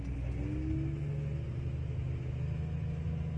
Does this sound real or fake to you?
real